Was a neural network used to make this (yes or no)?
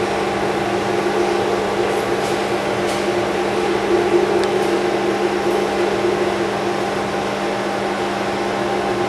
no